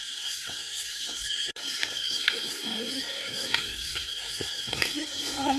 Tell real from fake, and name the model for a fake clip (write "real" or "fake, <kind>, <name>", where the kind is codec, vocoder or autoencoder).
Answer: fake, codec, SNAC